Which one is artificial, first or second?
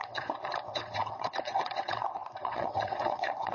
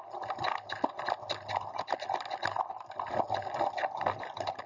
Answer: first